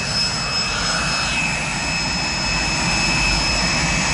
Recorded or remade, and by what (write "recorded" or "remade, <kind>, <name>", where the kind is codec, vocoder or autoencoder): recorded